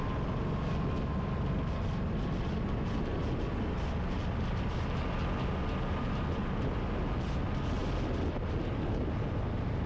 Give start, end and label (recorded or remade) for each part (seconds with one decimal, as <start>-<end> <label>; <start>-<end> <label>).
0.0-9.9 recorded